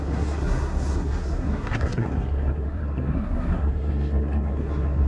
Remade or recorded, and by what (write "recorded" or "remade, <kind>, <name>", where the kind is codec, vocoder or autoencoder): remade, codec, SNAC